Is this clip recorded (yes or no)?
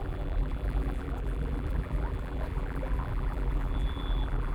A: no